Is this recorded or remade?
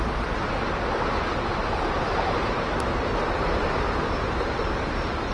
remade